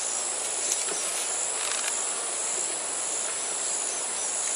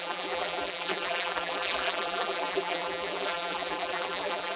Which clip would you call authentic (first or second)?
first